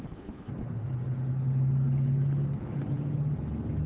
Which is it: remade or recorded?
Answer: recorded